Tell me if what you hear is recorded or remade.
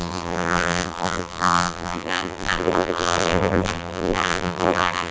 remade